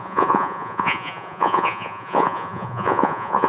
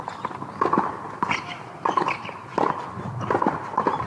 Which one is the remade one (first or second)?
first